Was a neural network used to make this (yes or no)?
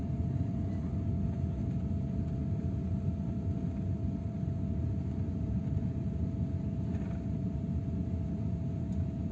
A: no